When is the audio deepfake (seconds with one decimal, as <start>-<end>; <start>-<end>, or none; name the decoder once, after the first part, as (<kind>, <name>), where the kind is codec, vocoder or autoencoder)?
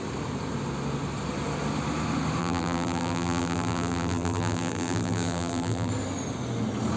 2.4-5.9 (vocoder, BigVGAN v2)